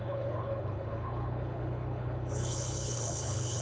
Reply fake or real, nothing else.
fake